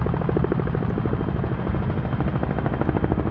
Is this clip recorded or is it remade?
recorded